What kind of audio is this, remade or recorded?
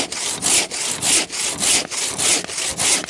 recorded